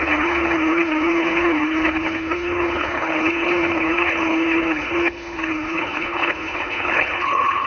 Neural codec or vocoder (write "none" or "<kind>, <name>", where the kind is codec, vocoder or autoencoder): codec, HILCodec